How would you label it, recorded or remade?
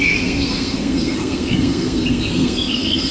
remade